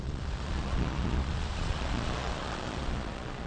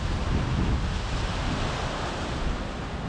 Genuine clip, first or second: second